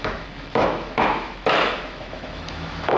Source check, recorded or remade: remade